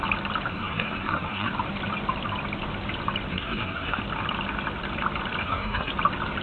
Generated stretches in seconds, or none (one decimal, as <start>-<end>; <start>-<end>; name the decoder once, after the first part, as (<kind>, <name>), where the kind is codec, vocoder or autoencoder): 0.5-1.5 (codec, SNAC); 3.3-4.0; 5.4-5.9